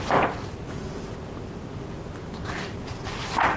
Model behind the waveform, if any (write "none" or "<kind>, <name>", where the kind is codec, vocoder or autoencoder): none